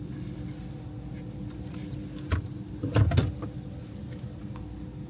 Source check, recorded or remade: recorded